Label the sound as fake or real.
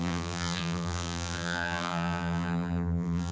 fake